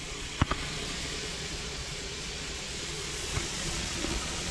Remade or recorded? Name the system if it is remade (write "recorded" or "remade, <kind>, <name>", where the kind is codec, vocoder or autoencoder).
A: remade, vocoder, Vocos